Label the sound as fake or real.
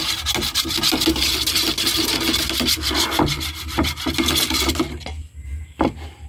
real